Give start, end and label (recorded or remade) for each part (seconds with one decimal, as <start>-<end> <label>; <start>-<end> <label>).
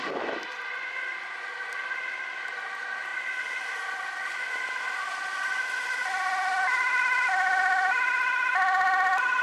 0.0-3.1 recorded; 3.1-4.5 remade; 4.5-9.4 recorded